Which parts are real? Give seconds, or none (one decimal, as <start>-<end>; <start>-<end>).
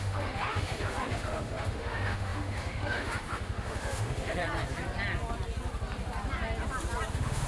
4.4-7.1